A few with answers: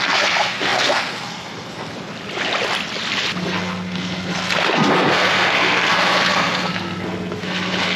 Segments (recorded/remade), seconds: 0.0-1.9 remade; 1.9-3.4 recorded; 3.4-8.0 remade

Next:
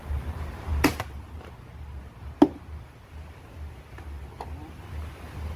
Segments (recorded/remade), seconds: 0.0-5.6 recorded